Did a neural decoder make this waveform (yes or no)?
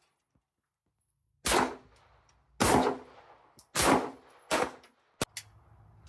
no